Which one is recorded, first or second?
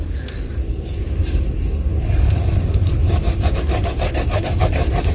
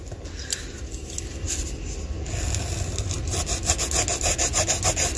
second